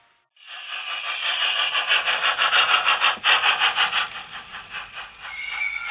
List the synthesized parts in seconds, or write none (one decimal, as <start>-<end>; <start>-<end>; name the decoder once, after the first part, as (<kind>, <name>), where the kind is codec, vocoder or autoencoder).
none